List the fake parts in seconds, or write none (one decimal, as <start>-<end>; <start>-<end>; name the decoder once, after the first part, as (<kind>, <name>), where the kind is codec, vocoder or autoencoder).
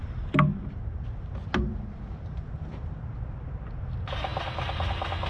none